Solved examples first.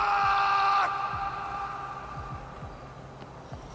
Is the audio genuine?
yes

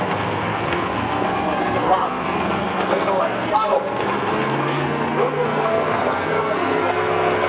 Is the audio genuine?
no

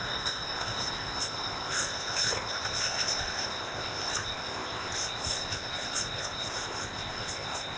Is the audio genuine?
no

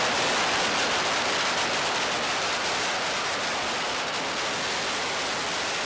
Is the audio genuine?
yes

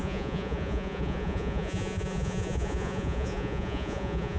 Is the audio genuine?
no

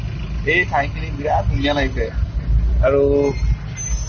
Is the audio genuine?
yes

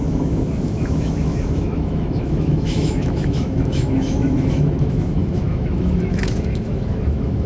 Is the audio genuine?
no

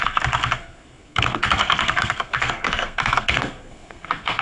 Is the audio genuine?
no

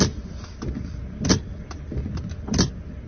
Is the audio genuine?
yes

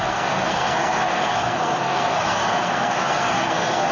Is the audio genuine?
no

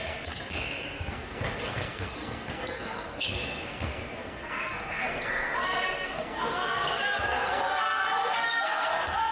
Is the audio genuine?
no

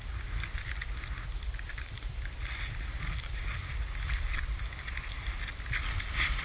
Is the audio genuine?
yes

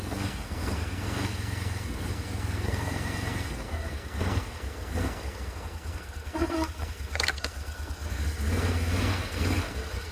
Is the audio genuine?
no